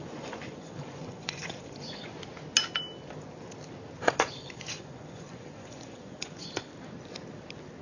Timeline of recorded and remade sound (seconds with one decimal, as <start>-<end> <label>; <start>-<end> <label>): 0.0-2.1 remade; 2.1-4.0 recorded; 4.0-6.7 remade; 6.7-7.8 recorded

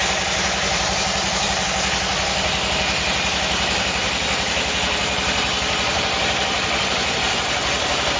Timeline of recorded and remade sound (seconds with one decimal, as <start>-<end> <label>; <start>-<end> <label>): 0.0-0.6 recorded; 0.6-1.6 remade; 1.6-8.2 recorded

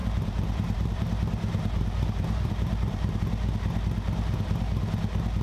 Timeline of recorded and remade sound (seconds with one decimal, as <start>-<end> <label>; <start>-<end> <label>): 0.0-3.2 remade; 3.2-5.4 recorded

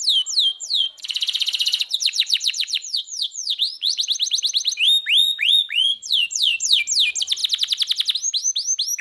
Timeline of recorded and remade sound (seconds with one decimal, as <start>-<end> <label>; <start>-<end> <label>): 0.0-0.5 recorded; 0.5-4.0 remade; 4.0-5.2 recorded; 5.2-6.8 remade; 6.8-9.0 recorded